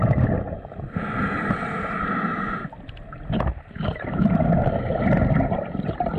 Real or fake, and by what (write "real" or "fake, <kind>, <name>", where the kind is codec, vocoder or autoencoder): real